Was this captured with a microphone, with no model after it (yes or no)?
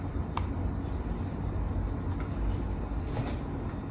yes